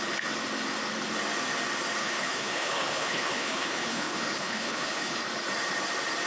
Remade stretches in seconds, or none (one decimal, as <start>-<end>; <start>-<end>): 2.0-5.2